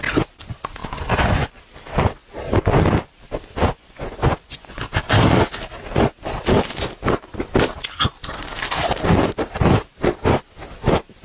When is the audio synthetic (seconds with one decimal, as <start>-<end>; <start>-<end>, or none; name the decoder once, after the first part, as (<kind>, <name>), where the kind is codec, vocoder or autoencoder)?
0.8-1.6 (vocoder, Vocos); 3.6-4.8